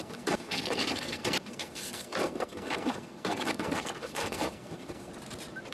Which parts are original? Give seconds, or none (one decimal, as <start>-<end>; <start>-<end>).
5.1-5.7